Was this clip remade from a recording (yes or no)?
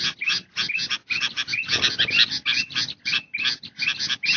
no